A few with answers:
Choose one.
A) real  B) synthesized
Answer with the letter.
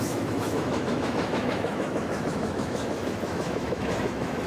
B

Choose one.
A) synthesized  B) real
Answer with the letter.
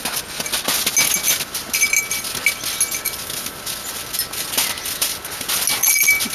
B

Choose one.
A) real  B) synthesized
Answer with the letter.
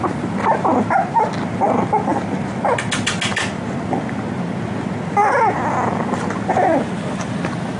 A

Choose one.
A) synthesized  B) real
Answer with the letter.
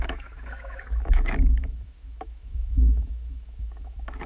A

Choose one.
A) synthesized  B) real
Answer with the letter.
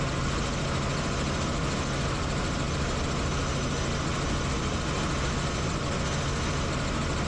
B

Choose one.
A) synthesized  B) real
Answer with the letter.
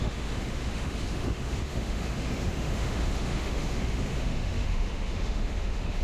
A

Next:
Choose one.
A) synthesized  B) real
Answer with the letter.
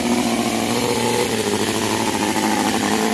B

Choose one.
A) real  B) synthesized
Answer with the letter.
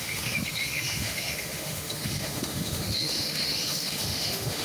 B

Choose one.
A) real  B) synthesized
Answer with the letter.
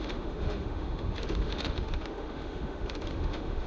B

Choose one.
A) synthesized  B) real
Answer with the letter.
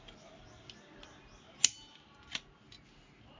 B